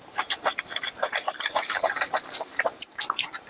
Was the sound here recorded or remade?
remade